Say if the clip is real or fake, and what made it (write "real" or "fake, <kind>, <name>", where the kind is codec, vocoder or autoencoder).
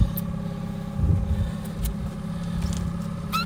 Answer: real